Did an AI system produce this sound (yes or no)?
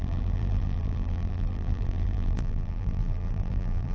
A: yes